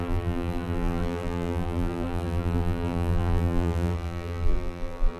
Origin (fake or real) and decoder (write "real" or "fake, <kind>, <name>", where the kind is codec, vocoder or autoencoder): fake, vocoder, BigVGAN v2